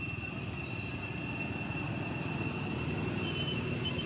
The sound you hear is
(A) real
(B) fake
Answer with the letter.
A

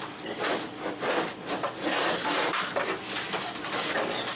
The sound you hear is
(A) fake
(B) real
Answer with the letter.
B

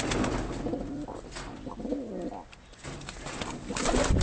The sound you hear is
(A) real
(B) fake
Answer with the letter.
A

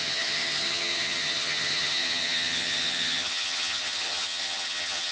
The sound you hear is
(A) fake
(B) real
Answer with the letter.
A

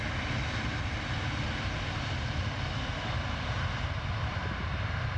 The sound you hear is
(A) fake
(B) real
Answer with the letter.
B